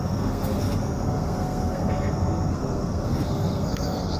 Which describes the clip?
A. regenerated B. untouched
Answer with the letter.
A